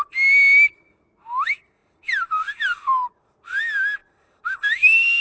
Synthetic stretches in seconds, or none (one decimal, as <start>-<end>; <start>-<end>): 1.8-3.6; 4.0-5.2